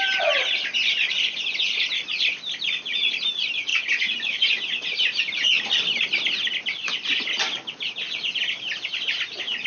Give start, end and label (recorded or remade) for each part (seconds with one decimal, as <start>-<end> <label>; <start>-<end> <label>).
0.0-9.7 recorded